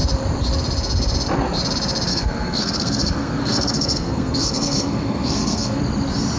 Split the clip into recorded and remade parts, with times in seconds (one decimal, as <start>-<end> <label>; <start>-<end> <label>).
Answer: 0.0-2.1 recorded; 2.1-5.8 remade; 5.8-6.4 recorded